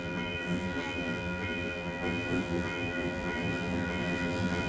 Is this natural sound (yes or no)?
no